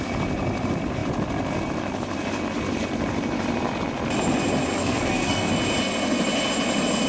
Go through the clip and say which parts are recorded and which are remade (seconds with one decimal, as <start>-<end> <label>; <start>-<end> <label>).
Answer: 0.0-4.8 recorded; 4.8-5.5 remade; 5.5-7.1 recorded